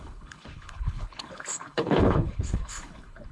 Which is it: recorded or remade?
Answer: remade